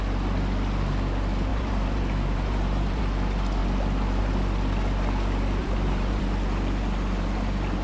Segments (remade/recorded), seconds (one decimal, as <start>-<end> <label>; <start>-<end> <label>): 0.0-1.5 recorded; 1.5-3.0 remade; 3.0-5.6 recorded; 5.6-6.2 remade; 6.2-7.8 recorded